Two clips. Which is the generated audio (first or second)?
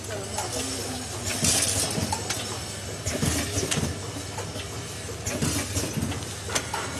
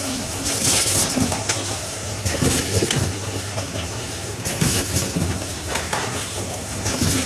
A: second